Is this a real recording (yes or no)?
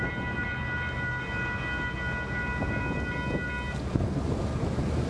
yes